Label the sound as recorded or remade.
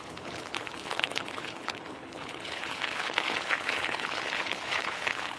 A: remade